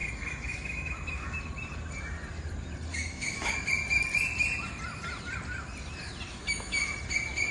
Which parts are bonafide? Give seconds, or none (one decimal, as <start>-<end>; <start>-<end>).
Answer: 1.4-2.9; 3.5-6.3; 6.8-7.5